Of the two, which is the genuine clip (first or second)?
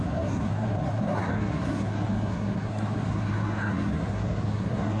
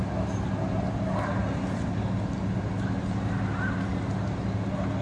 second